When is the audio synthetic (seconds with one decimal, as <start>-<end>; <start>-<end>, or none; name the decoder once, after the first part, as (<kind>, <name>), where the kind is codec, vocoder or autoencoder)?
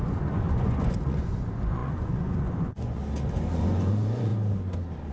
0.0-3.0 (vocoder, Vocos); 3.5-4.3